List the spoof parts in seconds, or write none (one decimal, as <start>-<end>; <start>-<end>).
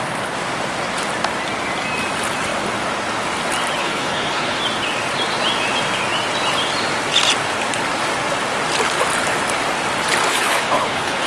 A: 3.8-4.6; 10.3-11.3